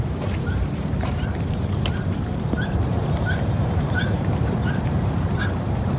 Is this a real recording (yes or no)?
no